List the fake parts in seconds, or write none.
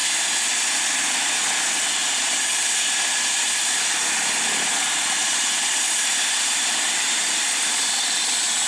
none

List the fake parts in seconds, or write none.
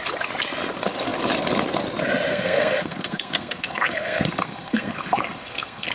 2.3-5.9 (codec, SNAC)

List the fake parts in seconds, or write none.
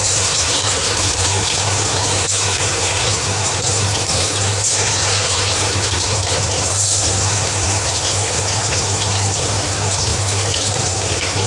0.0-11.5 (codec, SNAC)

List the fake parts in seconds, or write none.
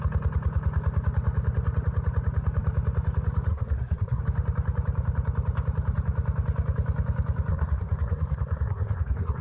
3.5-4.2 (codec, SNAC); 7.5-9.4